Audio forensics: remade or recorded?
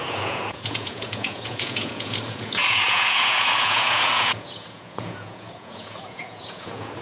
remade